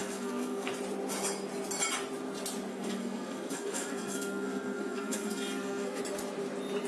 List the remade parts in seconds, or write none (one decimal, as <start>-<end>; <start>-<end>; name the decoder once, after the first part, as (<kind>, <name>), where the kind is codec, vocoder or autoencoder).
0.0-0.7 (codec, SNAC); 2.7-6.0